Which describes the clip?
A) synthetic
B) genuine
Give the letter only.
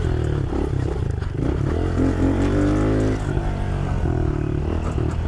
B